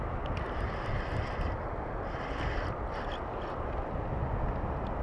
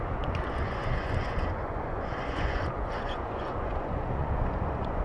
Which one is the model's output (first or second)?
second